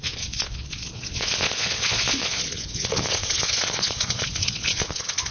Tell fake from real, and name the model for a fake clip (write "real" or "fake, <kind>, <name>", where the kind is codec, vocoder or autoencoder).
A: fake, vocoder, Vocos